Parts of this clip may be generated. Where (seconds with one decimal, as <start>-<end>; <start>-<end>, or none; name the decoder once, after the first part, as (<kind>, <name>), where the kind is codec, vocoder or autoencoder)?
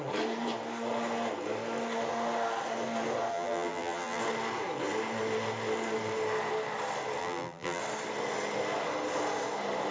3.3-4.2 (vocoder, BigVGAN v2); 7.2-7.8